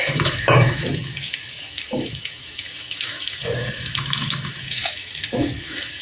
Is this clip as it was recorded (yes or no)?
no